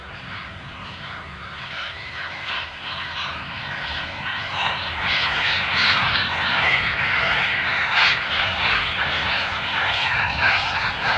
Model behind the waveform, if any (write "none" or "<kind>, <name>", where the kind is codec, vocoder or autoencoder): codec, SNAC